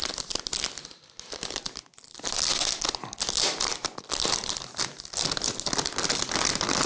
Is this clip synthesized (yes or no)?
no